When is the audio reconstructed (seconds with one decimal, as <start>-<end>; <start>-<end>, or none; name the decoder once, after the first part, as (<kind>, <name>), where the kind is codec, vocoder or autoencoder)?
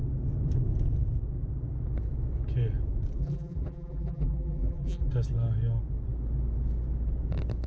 3.2-5.1 (vocoder, BigVGAN v2)